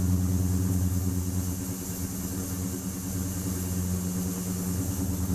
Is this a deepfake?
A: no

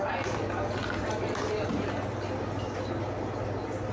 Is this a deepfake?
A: no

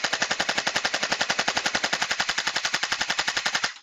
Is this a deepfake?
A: no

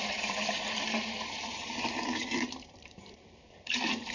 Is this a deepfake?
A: yes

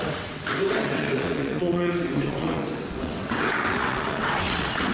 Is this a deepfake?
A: yes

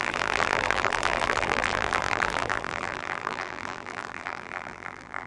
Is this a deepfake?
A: yes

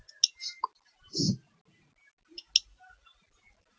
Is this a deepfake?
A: no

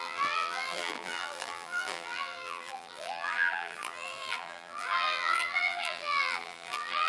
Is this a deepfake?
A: yes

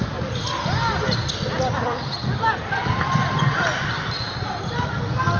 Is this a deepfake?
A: no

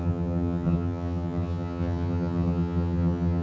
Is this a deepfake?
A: yes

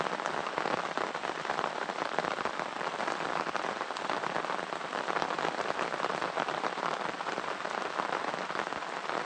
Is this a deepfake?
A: yes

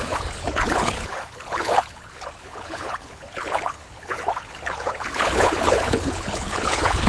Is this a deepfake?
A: yes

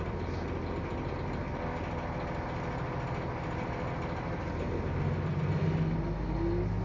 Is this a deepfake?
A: no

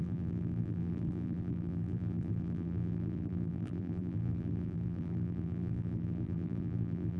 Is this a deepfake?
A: yes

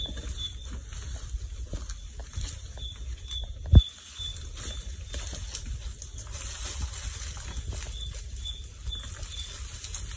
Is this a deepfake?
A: no